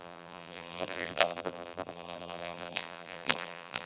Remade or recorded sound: remade